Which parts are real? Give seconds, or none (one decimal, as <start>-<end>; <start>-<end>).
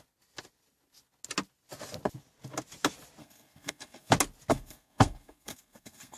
0.0-3.2; 4.1-4.5